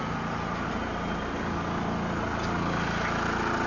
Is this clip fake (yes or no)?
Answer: no